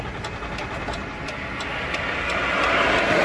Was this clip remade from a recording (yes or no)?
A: no